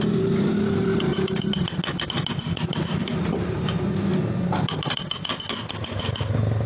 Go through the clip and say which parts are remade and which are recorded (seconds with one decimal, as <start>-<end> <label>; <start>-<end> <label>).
0.0-2.5 recorded; 2.5-3.0 remade; 3.0-6.7 recorded